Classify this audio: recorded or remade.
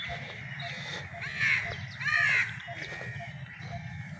recorded